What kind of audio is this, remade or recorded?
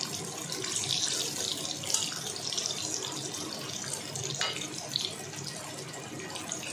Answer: recorded